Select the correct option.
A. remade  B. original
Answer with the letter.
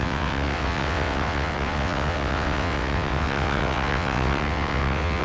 A